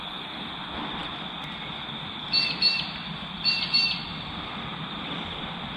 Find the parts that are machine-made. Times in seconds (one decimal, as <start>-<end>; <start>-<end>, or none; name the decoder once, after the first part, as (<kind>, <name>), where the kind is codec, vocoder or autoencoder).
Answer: none